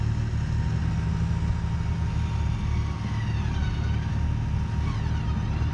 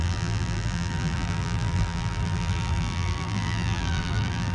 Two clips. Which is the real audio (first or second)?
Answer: first